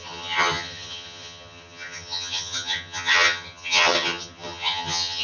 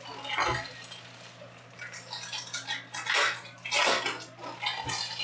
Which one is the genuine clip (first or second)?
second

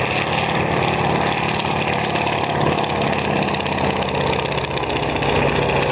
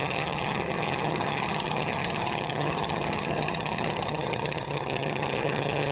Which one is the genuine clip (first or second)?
first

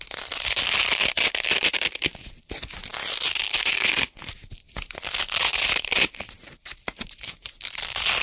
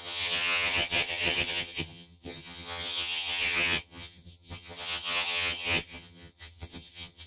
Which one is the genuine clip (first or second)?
first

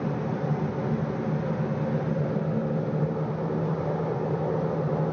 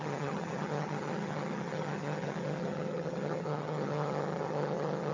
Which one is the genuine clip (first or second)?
first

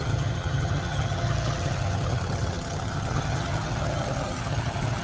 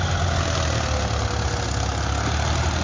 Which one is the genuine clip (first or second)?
second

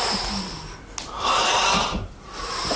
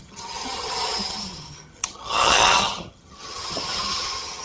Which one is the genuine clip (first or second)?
first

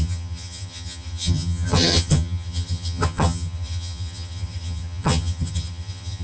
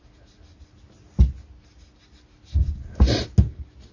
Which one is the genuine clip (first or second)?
second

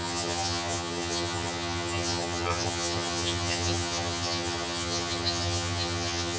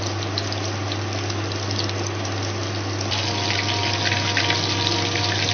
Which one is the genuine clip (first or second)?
second